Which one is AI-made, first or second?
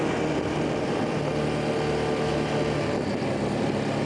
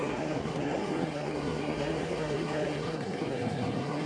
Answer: second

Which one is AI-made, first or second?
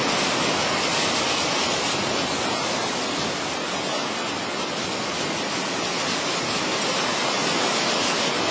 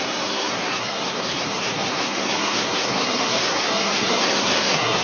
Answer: second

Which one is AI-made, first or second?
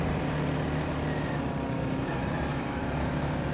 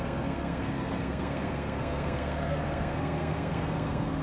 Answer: second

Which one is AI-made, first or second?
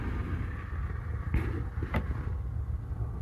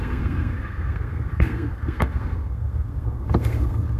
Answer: second